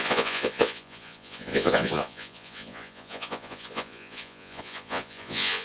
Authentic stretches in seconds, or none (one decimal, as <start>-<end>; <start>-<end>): none

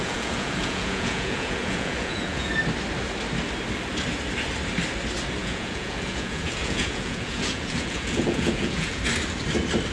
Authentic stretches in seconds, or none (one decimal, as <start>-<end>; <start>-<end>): 2.5-5.4; 9.0-9.9